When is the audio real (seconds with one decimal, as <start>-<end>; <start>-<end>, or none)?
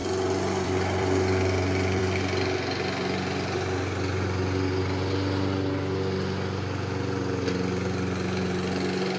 2.0-9.2